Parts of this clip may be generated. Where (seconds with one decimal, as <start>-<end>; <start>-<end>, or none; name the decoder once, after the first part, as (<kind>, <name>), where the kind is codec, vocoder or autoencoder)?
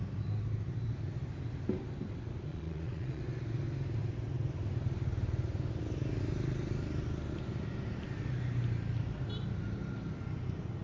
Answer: 2.5-3.2 (vocoder, Vocos)